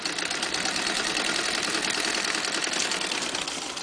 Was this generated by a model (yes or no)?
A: no